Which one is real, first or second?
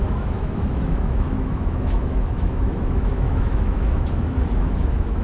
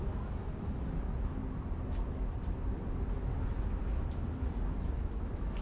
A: second